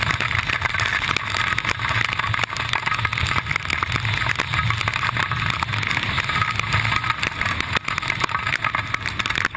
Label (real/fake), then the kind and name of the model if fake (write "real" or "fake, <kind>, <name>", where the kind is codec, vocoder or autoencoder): real